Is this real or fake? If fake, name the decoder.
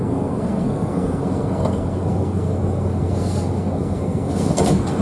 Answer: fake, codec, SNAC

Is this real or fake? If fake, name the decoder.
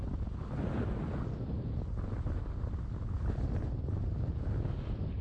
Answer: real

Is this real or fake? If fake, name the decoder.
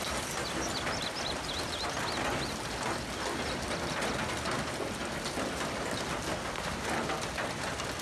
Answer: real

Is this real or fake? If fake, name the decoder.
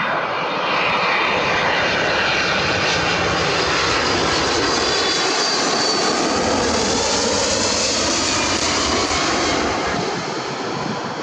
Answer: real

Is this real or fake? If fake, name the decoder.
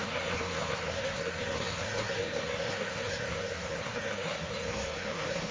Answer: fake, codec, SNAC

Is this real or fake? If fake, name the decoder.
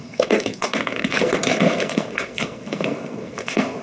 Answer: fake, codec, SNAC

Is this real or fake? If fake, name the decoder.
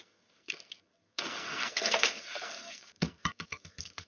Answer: fake, codec, SNAC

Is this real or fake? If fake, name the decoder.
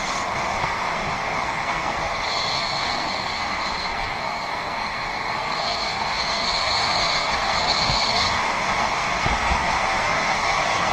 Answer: fake, codec, SNAC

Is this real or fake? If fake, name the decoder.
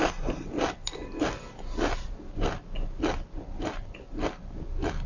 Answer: real